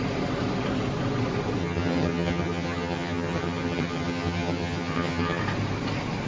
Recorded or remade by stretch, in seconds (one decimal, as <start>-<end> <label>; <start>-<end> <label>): 0.0-1.6 recorded; 1.6-5.4 remade; 5.4-6.3 recorded